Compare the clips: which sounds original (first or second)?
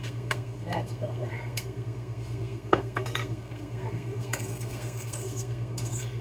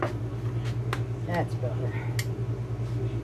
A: second